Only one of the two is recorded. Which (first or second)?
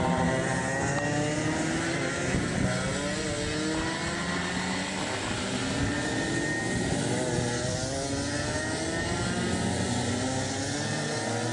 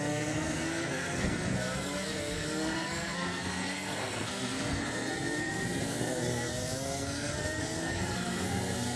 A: first